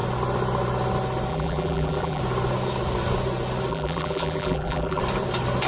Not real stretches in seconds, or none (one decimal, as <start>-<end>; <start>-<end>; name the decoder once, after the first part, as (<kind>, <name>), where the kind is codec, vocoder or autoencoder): 1.3-2.2 (vocoder, BigVGAN v2); 3.7-5.0